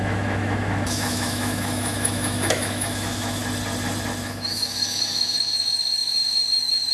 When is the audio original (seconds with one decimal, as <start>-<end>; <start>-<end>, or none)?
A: 3.4-4.2